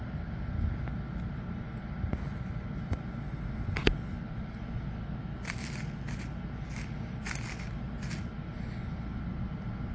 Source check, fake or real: real